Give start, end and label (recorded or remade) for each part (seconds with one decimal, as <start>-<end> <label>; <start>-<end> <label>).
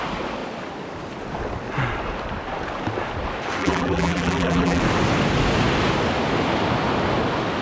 0.0-3.6 recorded; 3.6-4.8 remade; 4.8-7.6 recorded